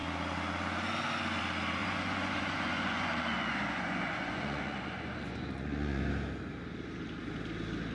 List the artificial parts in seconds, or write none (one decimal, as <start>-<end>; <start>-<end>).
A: 1.8-6.0